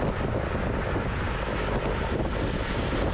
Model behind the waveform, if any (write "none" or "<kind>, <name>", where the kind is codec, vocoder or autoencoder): none